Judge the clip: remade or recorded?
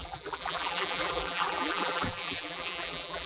remade